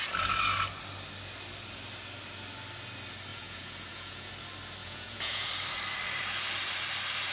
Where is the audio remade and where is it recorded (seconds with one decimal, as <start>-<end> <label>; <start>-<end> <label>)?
0.0-3.3 recorded; 3.3-4.3 remade; 4.3-4.8 recorded; 4.8-5.5 remade; 5.5-7.3 recorded